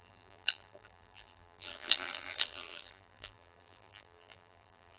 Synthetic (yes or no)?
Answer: yes